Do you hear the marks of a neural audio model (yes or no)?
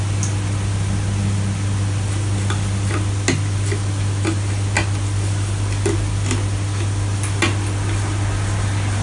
no